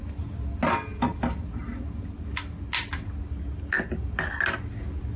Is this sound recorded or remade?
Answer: recorded